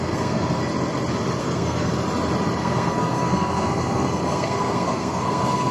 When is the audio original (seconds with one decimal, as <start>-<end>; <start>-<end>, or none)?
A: 0.6-1.4; 1.9-2.6